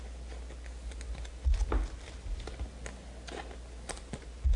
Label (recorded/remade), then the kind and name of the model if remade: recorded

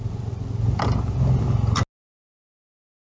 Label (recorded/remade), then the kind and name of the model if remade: recorded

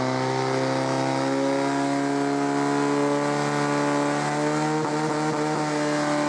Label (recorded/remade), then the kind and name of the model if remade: recorded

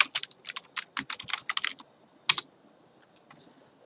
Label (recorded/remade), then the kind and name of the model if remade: recorded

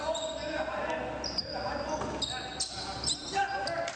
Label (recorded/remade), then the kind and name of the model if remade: recorded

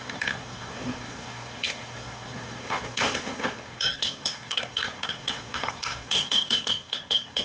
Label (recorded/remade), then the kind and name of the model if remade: remade, codec, SNAC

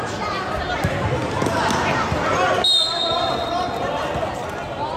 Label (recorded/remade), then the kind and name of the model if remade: recorded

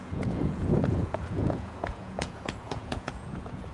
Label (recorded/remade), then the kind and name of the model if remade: remade, vocoder, Vocos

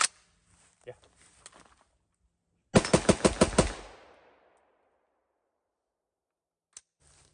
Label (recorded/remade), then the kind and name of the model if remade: recorded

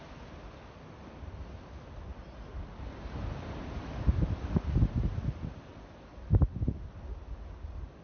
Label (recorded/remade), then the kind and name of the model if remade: recorded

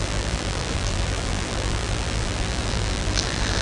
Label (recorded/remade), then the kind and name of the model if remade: remade, vocoder, BigVGAN v2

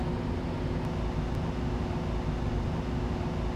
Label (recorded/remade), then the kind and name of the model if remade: recorded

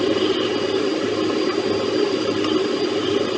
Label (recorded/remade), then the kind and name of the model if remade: recorded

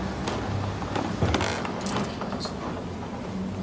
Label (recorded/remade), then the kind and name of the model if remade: recorded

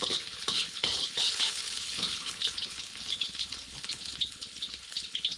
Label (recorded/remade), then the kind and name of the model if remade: remade, codec, HILCodec